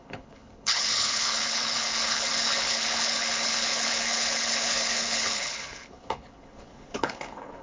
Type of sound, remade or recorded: remade